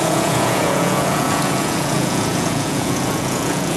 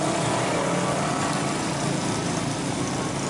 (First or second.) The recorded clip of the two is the second